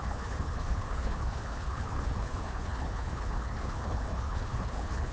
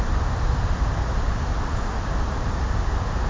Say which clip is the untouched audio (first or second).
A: second